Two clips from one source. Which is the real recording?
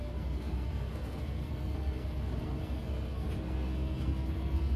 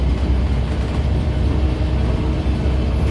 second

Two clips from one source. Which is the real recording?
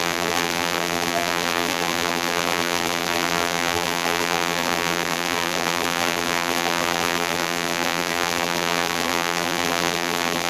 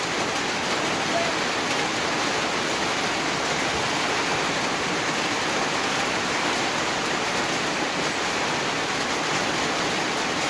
second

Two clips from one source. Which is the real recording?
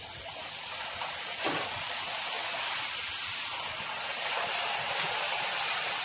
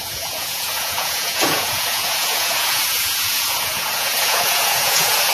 first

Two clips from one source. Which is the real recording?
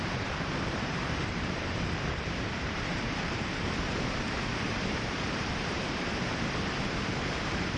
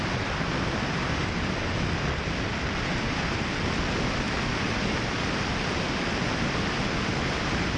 second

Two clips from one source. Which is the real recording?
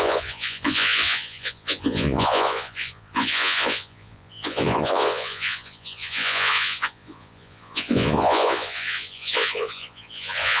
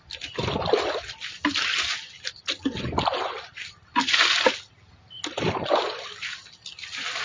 second